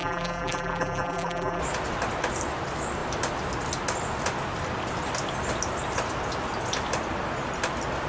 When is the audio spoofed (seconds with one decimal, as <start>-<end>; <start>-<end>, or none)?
0.0-1.6